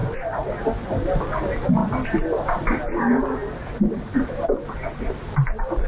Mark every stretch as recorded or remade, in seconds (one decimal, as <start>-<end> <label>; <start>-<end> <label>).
0.0-3.4 recorded; 3.4-5.3 remade; 5.3-5.9 recorded